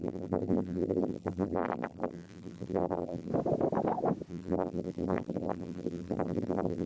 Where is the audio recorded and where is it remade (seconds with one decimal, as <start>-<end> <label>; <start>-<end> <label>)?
0.0-3.3 remade; 3.3-4.3 recorded; 4.3-6.9 remade